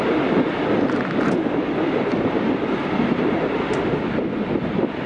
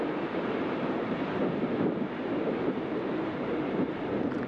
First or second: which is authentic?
first